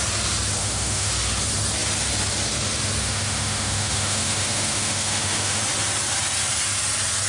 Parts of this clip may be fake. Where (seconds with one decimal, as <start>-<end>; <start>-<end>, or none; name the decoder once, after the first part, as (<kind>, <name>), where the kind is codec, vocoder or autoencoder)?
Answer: 0.6-1.1 (autoencoder, DAC-VAE); 3.0-5.6